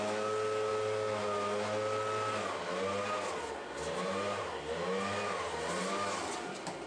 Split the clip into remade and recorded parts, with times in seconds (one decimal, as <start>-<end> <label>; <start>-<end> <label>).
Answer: 0.0-6.9 recorded